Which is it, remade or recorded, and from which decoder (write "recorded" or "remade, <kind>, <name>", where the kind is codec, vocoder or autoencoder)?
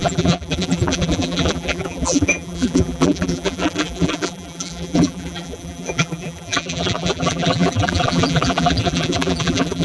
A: remade, vocoder, BigVGAN v2